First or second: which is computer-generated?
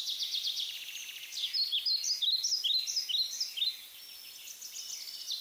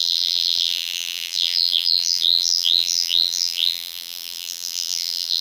second